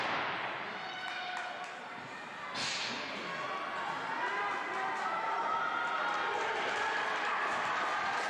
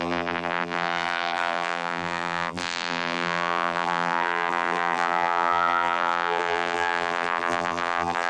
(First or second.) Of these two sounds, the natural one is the first